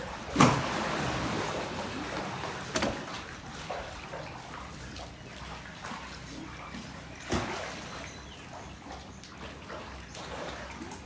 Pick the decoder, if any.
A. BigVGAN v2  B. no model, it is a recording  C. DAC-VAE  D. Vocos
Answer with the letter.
B